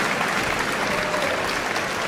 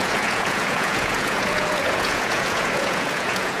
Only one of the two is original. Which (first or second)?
first